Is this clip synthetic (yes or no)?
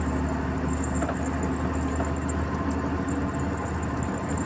no